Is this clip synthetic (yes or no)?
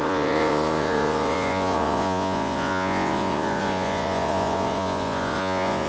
yes